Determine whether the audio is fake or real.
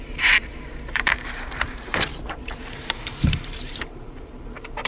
fake